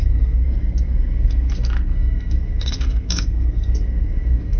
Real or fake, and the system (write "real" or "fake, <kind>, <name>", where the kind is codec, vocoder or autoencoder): fake, codec, SNAC